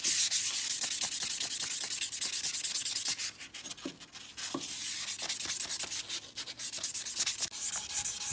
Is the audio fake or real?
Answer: real